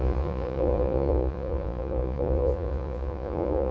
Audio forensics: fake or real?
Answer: fake